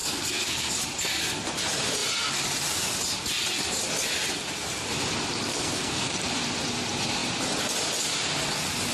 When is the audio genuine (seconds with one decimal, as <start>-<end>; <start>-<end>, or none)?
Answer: 0.7-5.5; 6.1-8.9